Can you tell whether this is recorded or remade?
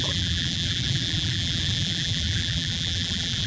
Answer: remade